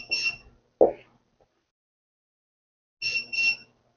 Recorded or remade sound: recorded